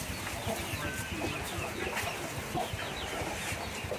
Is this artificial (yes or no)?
no